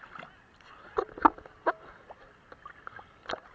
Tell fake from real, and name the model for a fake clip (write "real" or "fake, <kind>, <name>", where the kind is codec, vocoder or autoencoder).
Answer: real